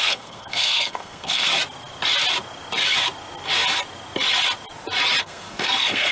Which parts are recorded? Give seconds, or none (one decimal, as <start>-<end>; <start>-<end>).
1.5-5.2